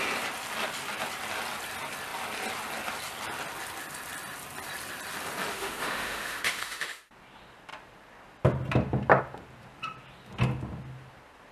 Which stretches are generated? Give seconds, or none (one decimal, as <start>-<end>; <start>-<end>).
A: 5.5-7.1